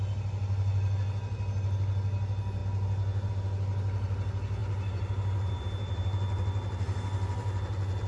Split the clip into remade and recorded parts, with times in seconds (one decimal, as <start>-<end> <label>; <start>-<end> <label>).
0.0-8.1 recorded